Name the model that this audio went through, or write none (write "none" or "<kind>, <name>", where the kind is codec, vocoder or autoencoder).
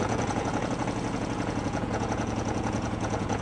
vocoder, Vocos